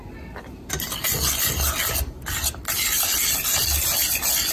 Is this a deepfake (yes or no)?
no